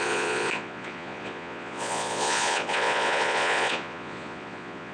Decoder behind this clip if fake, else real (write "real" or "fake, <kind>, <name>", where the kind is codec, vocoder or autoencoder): fake, vocoder, Vocos